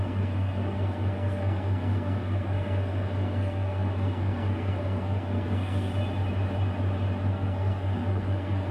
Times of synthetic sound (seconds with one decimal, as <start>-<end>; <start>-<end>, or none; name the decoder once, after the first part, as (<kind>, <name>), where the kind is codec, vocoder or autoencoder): 0.0-5.9 (codec, SNAC); 7.3-8.7